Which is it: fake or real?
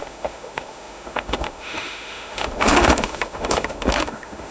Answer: fake